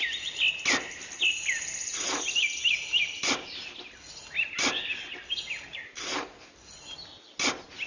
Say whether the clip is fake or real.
real